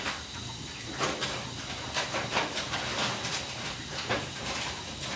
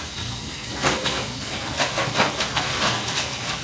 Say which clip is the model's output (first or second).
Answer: second